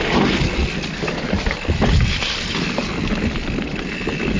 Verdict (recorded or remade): recorded